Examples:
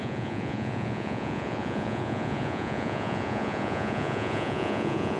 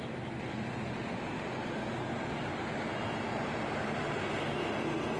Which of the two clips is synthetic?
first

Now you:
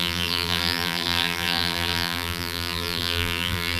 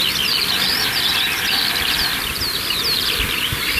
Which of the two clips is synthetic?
first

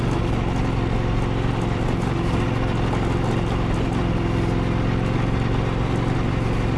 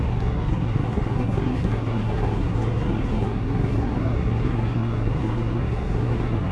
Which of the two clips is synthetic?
second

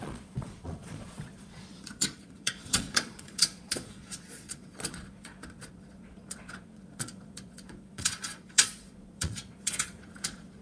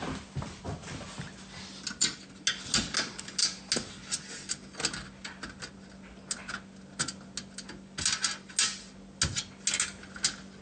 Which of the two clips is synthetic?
first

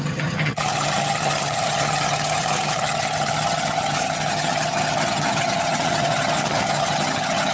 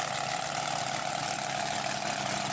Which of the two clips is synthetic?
first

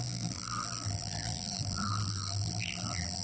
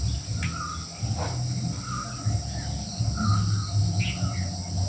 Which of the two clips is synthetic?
first